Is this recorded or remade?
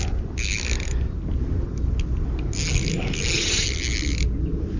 recorded